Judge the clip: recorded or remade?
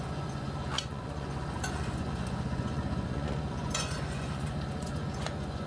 remade